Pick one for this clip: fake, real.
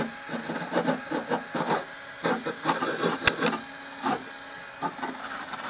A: real